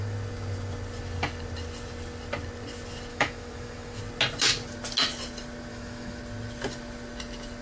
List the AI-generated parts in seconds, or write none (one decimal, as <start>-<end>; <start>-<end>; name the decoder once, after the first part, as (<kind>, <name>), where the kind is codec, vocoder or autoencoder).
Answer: 3.1-4.0 (autoencoder, DAC-VAE); 5.7-6.2